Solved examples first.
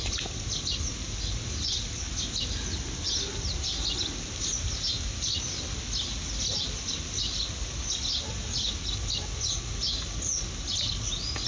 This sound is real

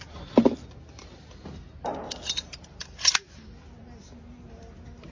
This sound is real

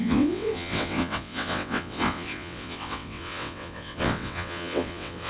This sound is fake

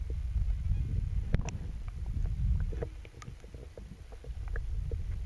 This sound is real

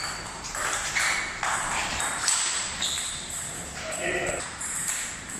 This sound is fake